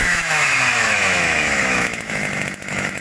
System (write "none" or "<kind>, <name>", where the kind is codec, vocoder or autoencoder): autoencoder, DAC-VAE